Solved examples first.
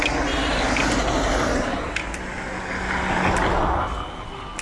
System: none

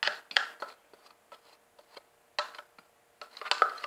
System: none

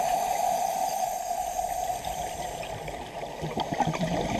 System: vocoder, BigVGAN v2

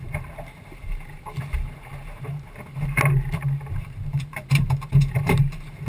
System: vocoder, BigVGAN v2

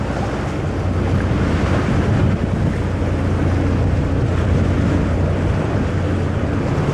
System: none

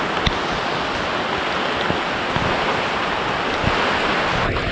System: none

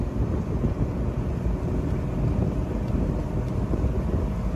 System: none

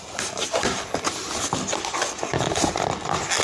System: none